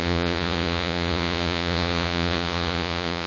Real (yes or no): no